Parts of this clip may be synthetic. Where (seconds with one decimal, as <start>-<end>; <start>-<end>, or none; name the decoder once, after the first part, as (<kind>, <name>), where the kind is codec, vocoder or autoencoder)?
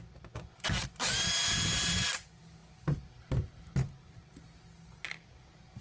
none